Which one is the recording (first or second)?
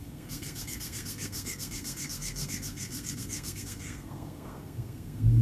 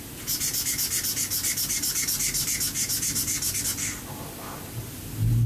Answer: second